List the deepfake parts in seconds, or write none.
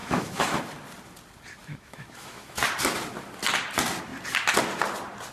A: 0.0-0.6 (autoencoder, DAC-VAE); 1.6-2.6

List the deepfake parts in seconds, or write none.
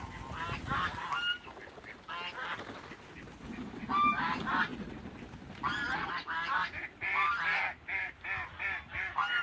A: none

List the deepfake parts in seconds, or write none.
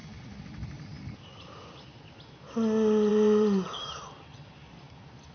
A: 3.1-4.0 (vocoder, BigVGAN v2)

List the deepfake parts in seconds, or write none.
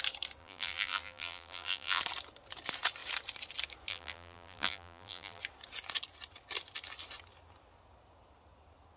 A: 0.4-2.0 (vocoder, BigVGAN v2); 3.9-5.4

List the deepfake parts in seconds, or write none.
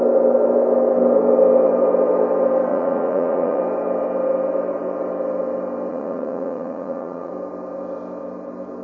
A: 2.7-3.6 (vocoder, Vocos); 5.9-7.3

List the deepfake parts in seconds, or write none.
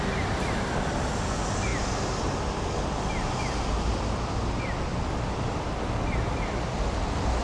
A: none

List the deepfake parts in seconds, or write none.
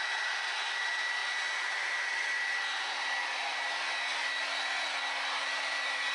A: none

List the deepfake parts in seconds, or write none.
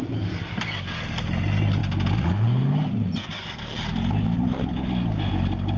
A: none